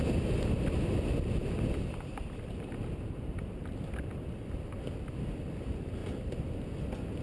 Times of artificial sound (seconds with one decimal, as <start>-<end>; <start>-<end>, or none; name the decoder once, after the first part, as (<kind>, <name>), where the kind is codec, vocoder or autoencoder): none